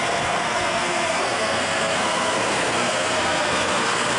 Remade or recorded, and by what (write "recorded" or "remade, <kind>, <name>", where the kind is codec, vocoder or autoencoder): remade, codec, SNAC